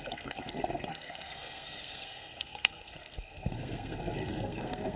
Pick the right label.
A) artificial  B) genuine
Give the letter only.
A